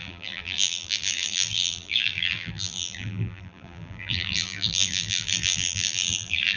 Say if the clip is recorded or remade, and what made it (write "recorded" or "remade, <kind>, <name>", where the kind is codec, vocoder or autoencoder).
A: remade, vocoder, BigVGAN v2